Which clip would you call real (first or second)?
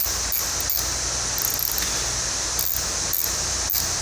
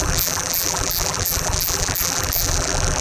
first